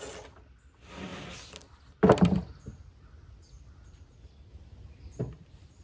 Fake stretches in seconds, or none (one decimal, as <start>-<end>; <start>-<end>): none